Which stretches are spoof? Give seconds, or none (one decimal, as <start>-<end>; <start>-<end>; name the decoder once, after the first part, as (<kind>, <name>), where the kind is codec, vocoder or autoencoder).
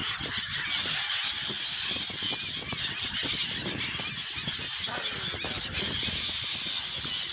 none